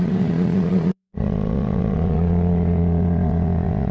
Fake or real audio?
fake